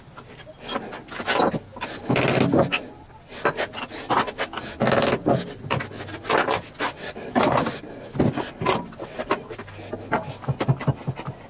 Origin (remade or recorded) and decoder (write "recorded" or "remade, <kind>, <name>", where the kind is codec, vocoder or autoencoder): recorded